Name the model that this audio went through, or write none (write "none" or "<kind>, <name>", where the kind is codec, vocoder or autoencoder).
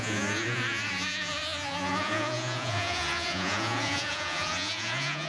vocoder, Vocos